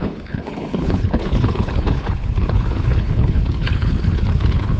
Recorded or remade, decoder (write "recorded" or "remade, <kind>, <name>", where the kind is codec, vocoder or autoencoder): remade, codec, HILCodec